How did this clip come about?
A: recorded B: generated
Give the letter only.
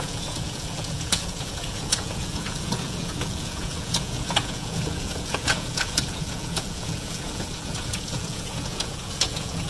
B